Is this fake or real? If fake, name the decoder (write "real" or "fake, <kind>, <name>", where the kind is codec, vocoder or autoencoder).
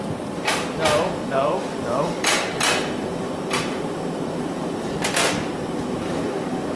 fake, vocoder, BigVGAN v2